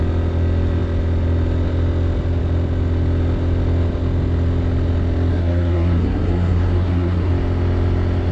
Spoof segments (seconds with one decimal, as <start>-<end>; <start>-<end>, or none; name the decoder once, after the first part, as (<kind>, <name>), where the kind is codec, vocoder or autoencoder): 5.3-7.3 (codec, SNAC)